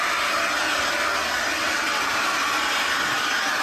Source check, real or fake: real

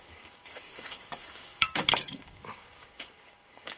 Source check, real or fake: fake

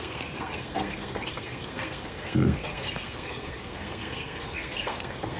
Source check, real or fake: fake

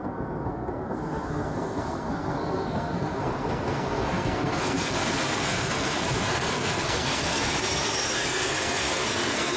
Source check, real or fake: fake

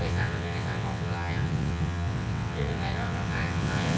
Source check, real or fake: fake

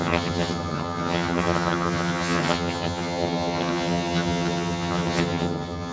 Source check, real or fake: fake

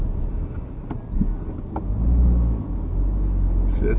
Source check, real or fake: real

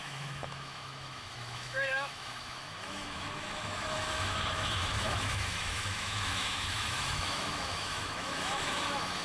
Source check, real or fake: fake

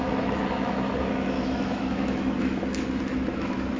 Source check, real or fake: fake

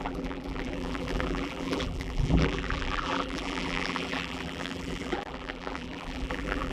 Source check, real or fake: fake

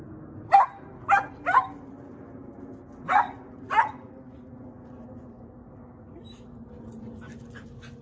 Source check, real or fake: real